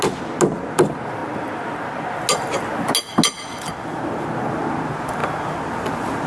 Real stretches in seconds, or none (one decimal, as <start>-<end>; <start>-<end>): 0.0-6.3